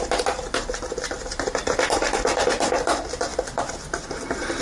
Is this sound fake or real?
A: real